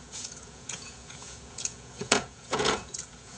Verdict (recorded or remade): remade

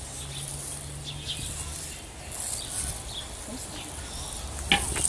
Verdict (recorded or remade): recorded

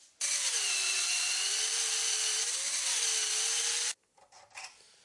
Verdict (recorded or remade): remade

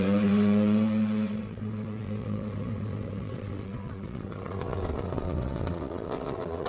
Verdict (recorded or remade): remade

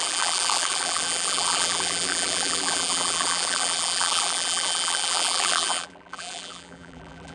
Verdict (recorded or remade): remade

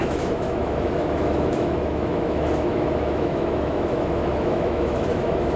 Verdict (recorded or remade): remade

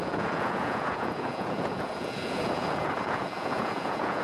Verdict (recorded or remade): remade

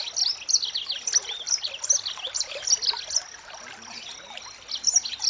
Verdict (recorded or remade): recorded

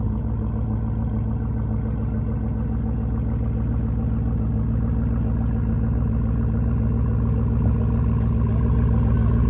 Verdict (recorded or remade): recorded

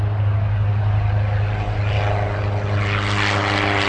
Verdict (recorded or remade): recorded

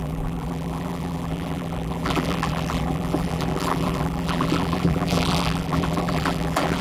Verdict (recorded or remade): remade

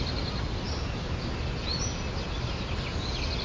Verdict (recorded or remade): recorded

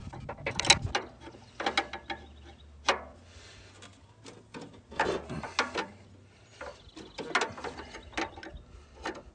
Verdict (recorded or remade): recorded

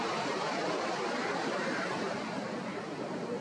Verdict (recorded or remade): recorded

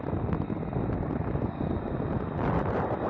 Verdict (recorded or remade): recorded